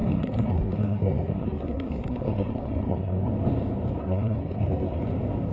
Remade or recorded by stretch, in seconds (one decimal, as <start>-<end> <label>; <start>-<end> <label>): 0.0-3.3 remade; 3.3-4.0 recorded; 4.0-5.0 remade; 5.0-5.5 recorded